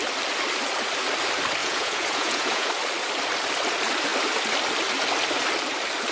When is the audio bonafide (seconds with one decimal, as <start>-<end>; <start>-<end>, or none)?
0.0-1.6; 2.7-6.1